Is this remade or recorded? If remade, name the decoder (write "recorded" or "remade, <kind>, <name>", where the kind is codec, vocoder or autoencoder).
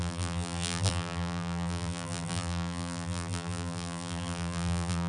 remade, vocoder, BigVGAN v2